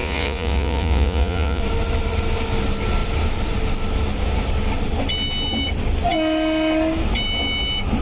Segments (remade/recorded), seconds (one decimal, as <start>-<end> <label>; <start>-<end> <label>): 0.0-1.6 remade; 1.6-8.0 recorded